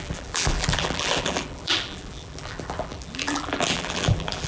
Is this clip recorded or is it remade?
remade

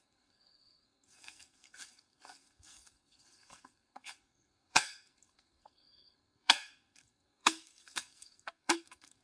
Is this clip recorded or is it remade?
remade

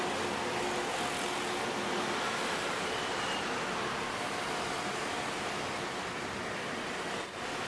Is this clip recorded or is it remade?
recorded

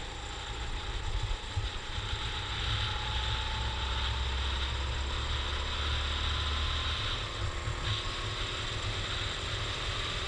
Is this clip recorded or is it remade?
recorded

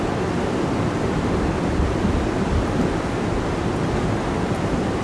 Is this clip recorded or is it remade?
recorded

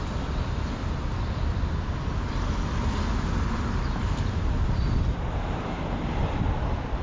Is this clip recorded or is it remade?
recorded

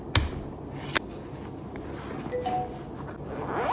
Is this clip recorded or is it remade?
recorded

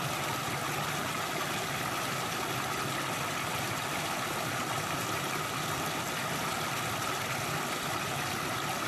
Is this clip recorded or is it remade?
recorded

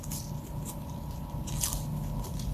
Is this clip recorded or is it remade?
recorded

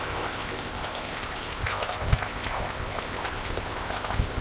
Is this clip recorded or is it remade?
remade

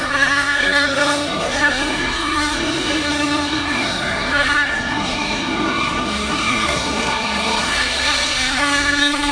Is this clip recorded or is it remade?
remade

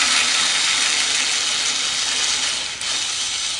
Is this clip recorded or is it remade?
recorded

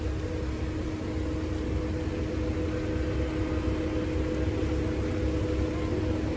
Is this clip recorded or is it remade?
recorded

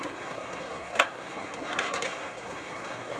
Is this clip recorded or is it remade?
remade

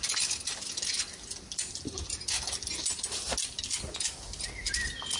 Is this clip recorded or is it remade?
recorded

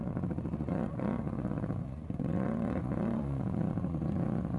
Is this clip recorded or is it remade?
remade